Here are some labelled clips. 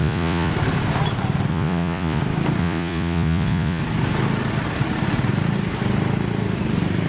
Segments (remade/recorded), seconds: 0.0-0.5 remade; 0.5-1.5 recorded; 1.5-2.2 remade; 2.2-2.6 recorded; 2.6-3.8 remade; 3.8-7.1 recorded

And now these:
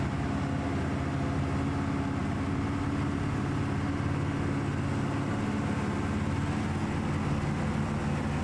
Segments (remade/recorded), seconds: 0.0-2.2 recorded; 2.2-3.4 remade; 3.4-8.4 recorded